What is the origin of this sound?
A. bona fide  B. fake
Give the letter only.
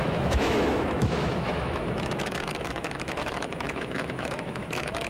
B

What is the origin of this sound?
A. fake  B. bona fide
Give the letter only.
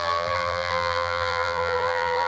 A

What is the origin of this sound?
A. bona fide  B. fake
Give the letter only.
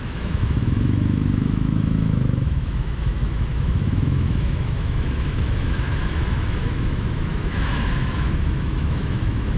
B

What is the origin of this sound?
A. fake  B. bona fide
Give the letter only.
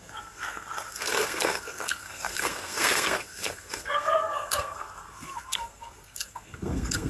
A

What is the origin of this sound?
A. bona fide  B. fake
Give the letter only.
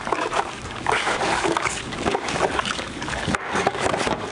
B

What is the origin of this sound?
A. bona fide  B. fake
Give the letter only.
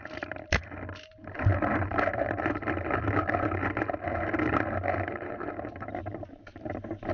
B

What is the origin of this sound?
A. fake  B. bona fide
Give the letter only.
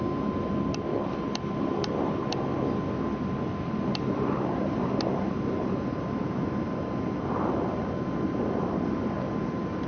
B